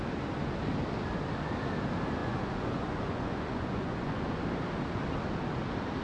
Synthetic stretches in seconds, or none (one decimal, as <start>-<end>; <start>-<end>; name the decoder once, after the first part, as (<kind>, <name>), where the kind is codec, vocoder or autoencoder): 2.2-4.4 (vocoder, Vocos)